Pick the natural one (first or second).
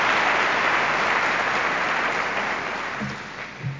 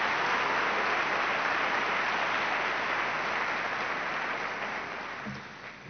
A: second